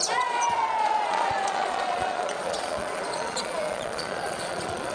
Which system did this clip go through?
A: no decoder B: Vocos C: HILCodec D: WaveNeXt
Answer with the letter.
B